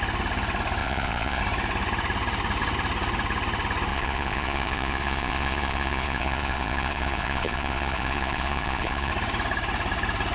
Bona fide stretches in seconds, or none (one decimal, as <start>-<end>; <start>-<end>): 0.0-0.8; 1.4-3.9; 9.1-10.3